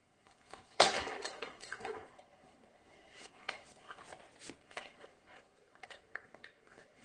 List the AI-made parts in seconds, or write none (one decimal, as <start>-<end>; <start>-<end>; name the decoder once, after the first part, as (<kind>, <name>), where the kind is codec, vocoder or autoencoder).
0.0-4.0 (codec, SNAC); 4.6-7.0